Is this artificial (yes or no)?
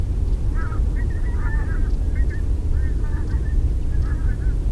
no